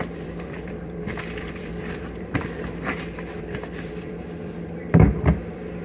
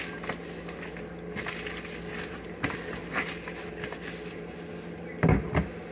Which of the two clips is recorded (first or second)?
second